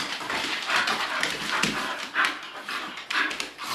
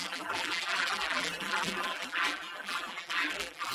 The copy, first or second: second